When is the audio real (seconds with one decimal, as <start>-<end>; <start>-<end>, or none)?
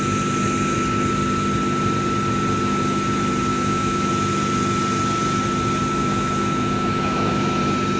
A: 0.0-3.5; 4.1-6.0; 7.6-8.0